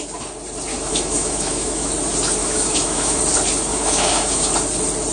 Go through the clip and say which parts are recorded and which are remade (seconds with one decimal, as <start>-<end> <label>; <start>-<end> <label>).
0.0-0.7 recorded; 0.7-1.9 remade; 1.9-2.4 recorded; 2.4-3.2 remade; 3.2-3.7 recorded; 3.7-4.5 remade; 4.5-5.1 recorded